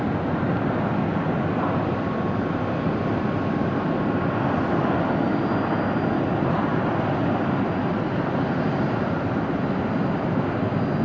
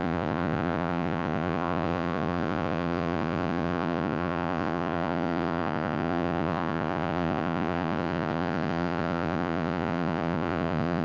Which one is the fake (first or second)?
second